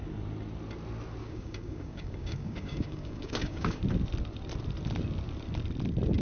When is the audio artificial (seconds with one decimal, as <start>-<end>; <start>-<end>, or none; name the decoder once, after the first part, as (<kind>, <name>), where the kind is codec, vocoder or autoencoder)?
1.2-3.8 (codec, DAC)